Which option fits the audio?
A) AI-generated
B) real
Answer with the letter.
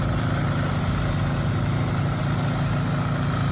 B